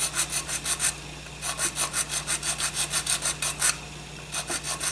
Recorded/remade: recorded